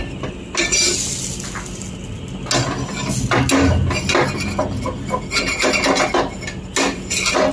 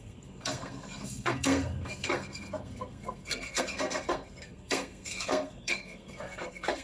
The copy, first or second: second